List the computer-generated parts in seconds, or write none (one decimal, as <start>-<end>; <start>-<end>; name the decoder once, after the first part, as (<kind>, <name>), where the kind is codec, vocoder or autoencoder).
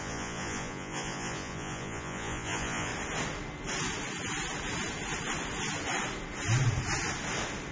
0.0-2.9 (vocoder, Vocos)